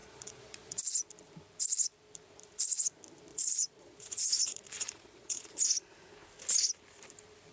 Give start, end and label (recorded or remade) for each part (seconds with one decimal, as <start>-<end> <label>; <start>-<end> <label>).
0.0-0.8 remade; 0.8-3.3 recorded; 3.3-5.6 remade; 5.6-7.5 recorded